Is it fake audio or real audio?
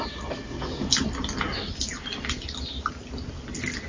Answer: real